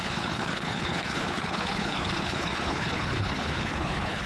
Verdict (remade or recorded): remade